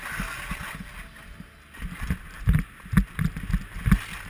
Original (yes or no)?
yes